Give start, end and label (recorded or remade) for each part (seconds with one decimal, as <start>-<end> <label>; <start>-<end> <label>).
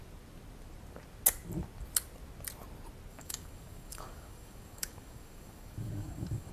0.0-3.1 recorded; 3.1-6.5 remade